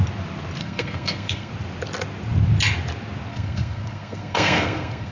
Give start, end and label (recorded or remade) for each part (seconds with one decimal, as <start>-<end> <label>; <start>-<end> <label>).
0.0-0.6 recorded; 0.6-1.5 remade; 1.5-3.3 recorded; 3.3-5.1 remade